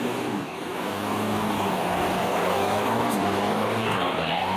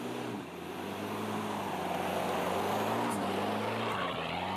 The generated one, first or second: first